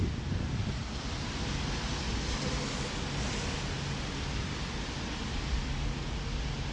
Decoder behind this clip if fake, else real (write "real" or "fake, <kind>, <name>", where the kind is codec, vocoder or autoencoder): real